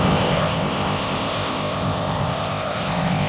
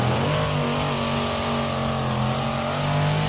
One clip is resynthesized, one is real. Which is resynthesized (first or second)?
first